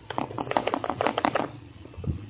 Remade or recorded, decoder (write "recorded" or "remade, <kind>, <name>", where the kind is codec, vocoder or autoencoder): remade, vocoder, Vocos